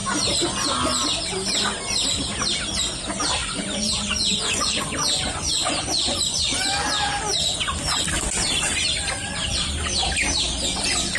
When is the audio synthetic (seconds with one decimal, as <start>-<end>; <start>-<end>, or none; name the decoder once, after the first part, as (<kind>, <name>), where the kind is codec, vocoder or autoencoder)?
3.4-6.7 (vocoder, Vocos)

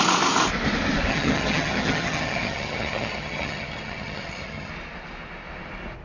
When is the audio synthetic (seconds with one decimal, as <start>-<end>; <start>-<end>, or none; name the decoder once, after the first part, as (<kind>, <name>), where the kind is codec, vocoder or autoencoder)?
1.1-4.7 (vocoder, HiFi-GAN)

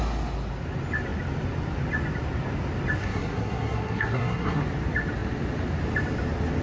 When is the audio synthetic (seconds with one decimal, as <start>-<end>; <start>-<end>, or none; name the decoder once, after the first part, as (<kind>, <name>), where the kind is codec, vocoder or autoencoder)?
3.0-4.6 (codec, SNAC)